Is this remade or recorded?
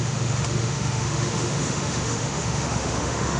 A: remade